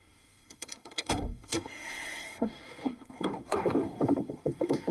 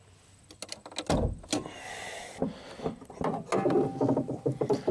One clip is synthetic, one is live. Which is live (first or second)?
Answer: second